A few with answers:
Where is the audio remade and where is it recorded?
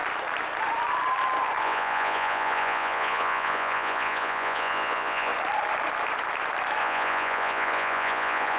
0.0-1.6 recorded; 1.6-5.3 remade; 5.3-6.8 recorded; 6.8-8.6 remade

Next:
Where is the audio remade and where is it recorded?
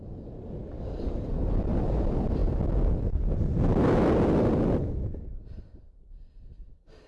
0.0-7.1 recorded